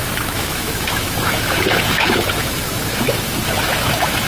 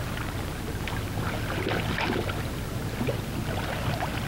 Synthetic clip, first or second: first